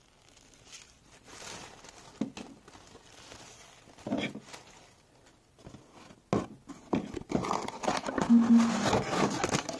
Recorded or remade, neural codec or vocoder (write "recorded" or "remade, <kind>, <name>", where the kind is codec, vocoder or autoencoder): recorded